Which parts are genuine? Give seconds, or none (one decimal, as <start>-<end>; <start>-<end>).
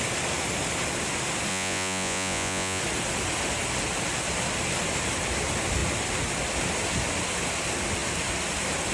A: 0.0-1.5; 2.8-8.9